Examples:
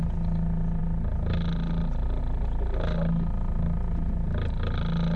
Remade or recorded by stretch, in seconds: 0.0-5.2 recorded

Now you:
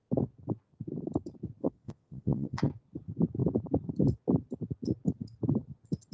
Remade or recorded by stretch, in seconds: 0.0-1.6 recorded; 1.6-2.6 remade; 2.6-6.1 recorded

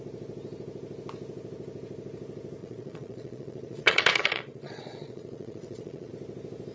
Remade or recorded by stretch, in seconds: 0.0-2.6 recorded; 2.6-6.1 remade; 6.1-6.7 recorded

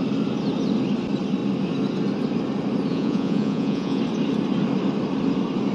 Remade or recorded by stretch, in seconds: 0.0-2.9 recorded; 2.9-4.0 remade; 4.0-5.7 recorded